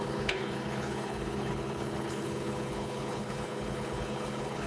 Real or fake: fake